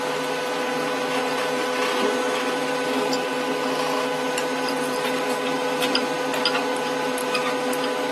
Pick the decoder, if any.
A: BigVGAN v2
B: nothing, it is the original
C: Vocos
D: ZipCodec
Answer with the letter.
B